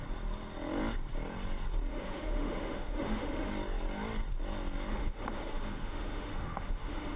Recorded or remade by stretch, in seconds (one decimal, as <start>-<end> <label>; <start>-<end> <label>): 0.0-1.9 recorded; 1.9-3.5 remade; 3.5-4.9 recorded; 4.9-7.2 remade